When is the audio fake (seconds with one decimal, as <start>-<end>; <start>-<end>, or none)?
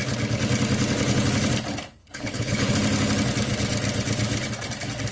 2.0-2.7